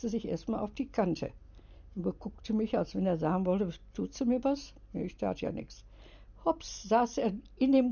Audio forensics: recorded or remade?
recorded